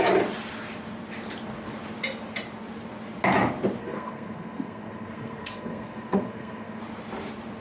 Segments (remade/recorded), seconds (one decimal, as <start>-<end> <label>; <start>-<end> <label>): 0.0-3.8 recorded; 3.8-6.8 remade; 6.8-7.6 recorded